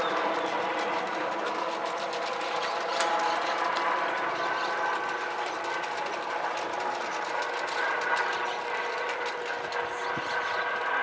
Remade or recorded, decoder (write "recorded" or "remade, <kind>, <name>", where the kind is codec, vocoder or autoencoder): recorded